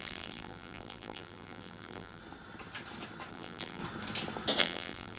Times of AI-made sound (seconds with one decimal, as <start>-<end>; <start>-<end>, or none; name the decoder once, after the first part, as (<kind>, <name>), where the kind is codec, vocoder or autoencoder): 0.0-2.2 (vocoder, BigVGAN v2); 3.3-3.8; 4.6-5.2